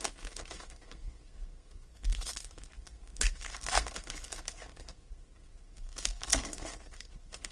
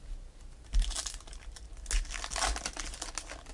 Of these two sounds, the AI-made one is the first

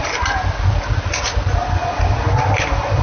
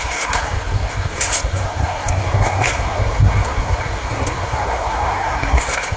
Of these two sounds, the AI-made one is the second